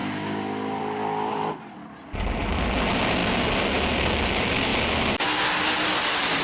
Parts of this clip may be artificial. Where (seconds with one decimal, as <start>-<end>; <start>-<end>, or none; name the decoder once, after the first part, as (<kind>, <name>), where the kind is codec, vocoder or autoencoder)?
none